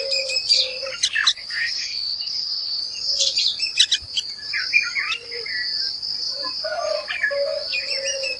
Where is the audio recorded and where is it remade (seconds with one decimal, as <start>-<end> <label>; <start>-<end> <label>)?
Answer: 0.0-1.3 recorded; 1.3-2.8 remade; 2.8-8.4 recorded